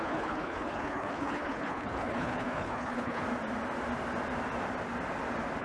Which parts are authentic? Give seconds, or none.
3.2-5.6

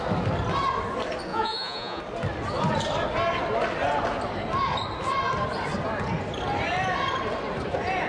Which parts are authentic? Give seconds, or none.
0.0-1.3; 2.0-8.1

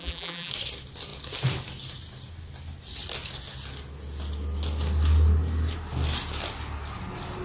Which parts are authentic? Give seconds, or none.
0.5-7.4

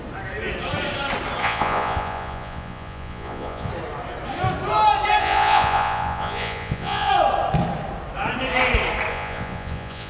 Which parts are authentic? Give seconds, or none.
0.0-1.4; 3.7-5.2; 7.1-9.1

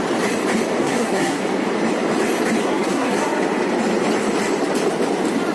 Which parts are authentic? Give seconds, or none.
0.0-0.8; 1.4-2.6; 3.2-5.5

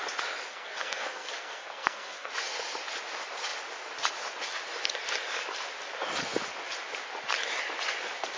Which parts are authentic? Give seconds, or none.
0.0-0.5; 2.3-8.4

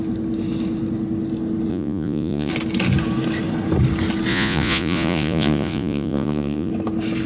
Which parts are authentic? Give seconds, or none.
0.0-1.7; 2.5-4.3; 6.7-7.3

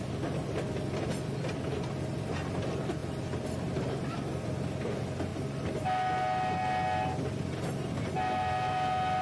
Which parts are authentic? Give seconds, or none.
0.0-9.2